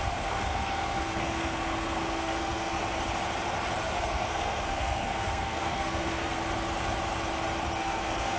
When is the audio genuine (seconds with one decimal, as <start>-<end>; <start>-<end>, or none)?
2.8-4.0; 6.4-7.8